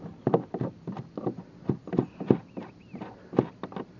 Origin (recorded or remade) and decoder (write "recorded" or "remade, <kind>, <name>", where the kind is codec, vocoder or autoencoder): recorded